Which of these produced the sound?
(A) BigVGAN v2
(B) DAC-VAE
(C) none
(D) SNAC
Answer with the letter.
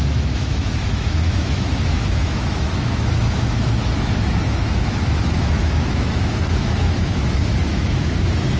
B